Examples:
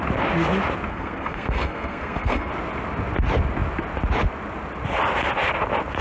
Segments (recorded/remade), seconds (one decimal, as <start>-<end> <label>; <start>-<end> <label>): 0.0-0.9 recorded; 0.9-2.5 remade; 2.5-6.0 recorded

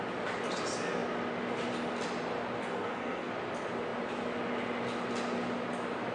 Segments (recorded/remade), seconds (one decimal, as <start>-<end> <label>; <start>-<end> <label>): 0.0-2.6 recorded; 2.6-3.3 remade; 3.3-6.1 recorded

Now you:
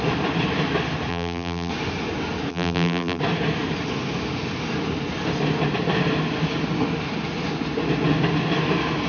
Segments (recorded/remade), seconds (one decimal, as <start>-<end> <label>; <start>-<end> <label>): 0.0-1.1 recorded; 1.1-1.7 remade; 1.7-2.5 recorded; 2.5-3.2 remade; 3.2-9.1 recorded